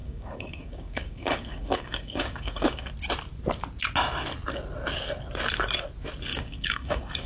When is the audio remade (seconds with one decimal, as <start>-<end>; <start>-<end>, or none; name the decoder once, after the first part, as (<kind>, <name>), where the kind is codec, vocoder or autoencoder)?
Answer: 0.0-2.9 (codec, DAC); 6.3-7.3